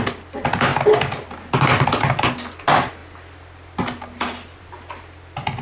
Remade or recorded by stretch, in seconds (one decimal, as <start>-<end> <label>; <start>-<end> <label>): 0.0-5.6 recorded